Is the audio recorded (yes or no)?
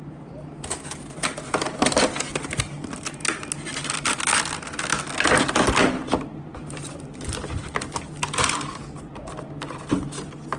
yes